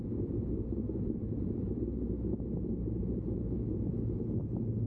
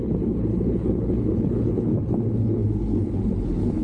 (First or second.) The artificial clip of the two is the second